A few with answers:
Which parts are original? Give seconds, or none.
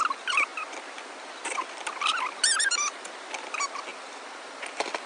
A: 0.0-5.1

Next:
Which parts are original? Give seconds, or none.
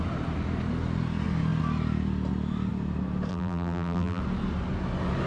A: 0.0-3.3; 4.2-5.3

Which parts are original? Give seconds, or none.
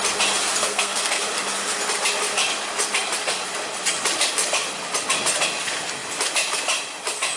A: 0.0-0.6; 1.2-7.4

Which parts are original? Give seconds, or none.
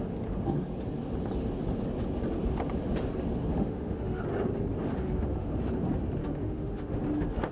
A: 0.0-3.5; 4.2-4.8; 5.5-6.2; 7.0-7.5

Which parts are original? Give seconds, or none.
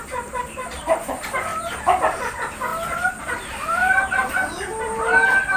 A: 2.7-3.2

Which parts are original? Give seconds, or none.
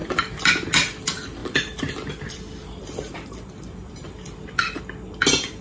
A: 0.5-1.4; 4.8-5.6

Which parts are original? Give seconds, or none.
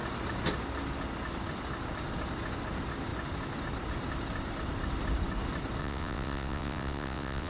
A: 0.0-5.8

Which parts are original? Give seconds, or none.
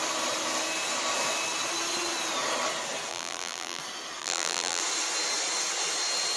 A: 0.0-3.1; 3.8-4.2; 4.8-6.4